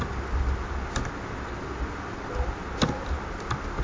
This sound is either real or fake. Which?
real